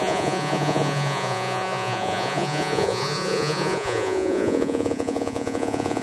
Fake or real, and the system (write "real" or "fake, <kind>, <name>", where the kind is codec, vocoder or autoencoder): fake, vocoder, Vocos